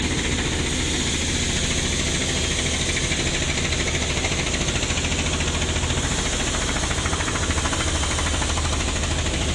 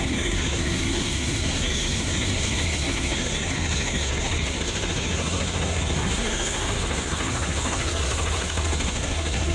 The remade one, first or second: second